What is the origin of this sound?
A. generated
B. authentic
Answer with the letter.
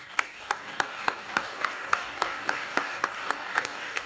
A